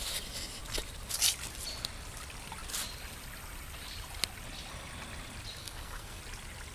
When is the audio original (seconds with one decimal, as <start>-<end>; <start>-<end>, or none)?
0.0-5.6; 6.2-6.7